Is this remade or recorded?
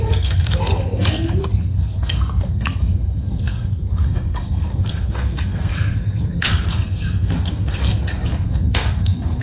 remade